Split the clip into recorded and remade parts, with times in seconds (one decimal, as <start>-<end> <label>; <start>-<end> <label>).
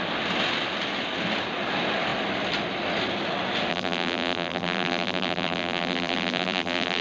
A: 0.0-3.7 recorded; 3.7-7.0 remade